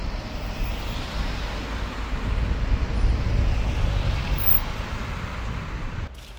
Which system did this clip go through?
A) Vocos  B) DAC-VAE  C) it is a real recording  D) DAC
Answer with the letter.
C